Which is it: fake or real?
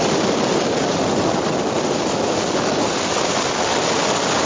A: real